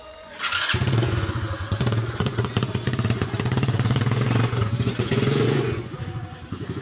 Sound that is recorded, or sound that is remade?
remade